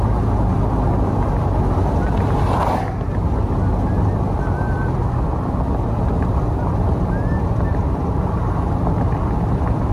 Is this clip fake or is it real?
real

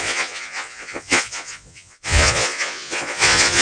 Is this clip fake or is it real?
fake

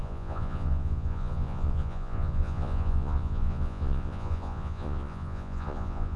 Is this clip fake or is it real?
fake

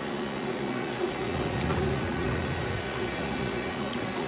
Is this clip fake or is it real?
fake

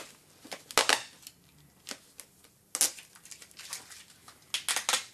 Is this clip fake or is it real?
real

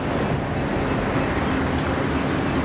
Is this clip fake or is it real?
real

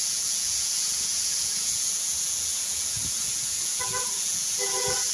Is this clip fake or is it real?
fake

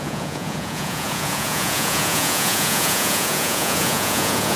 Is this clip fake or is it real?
fake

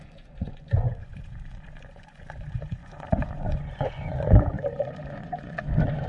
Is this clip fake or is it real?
fake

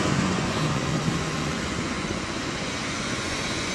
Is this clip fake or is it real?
fake